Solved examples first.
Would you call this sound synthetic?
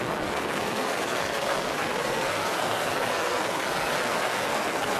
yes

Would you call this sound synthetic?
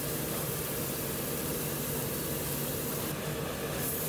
no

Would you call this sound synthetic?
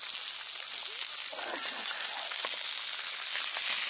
no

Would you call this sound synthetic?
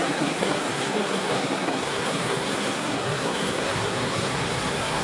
yes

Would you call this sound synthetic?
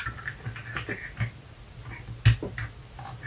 no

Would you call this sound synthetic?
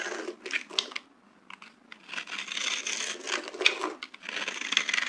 no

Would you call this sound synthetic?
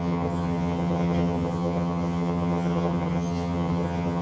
yes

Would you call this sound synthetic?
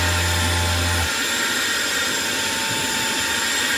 no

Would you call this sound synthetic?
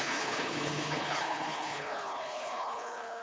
yes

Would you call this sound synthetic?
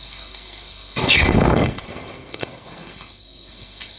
yes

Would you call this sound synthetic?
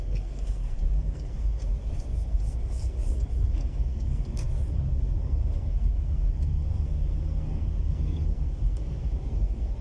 yes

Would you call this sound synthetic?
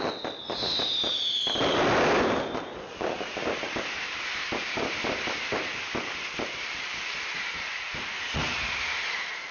no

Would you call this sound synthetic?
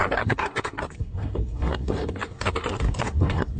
yes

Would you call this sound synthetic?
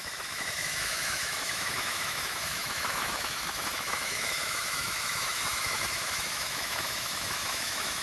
yes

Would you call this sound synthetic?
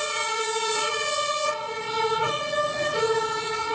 yes